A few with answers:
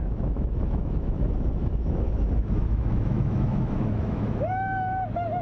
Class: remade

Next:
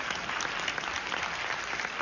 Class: recorded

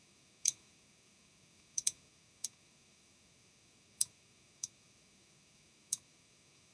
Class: remade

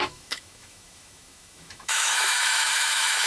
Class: remade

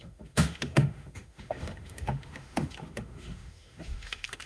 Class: remade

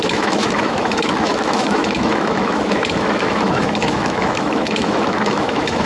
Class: remade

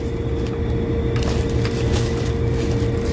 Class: recorded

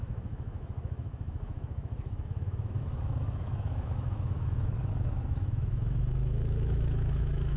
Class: remade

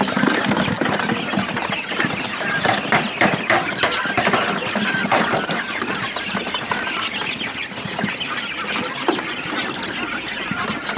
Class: recorded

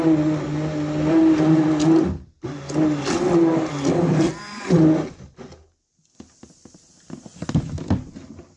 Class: recorded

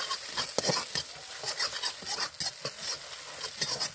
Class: recorded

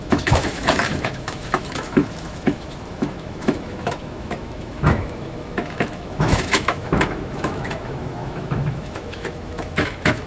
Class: remade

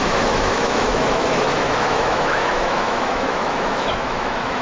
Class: remade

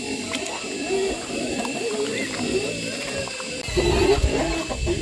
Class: recorded